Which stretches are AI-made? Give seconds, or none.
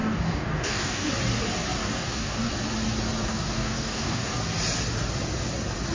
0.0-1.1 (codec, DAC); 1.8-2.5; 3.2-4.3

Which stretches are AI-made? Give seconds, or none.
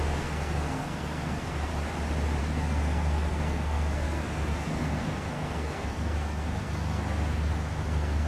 0.0-1.7 (codec, SNAC); 2.4-8.3